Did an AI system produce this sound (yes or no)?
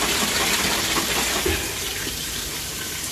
no